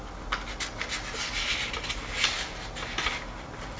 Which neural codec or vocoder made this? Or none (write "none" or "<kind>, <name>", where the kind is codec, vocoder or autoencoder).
none